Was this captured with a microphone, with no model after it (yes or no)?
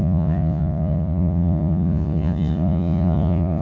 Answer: no